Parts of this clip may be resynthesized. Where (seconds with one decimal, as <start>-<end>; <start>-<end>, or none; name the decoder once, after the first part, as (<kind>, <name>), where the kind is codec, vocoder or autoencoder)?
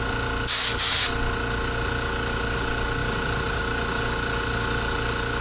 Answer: 3.0-3.6 (vocoder, BigVGAN v2)